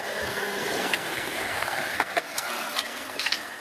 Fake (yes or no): yes